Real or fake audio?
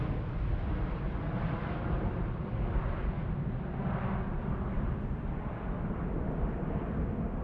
real